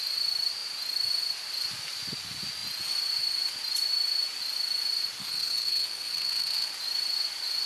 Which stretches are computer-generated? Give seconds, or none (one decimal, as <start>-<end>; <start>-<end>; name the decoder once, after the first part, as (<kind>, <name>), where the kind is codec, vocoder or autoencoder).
5.2-6.7 (codec, SNAC)